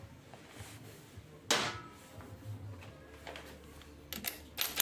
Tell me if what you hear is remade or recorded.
recorded